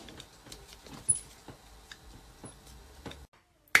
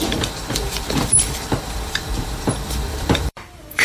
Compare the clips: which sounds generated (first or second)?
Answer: second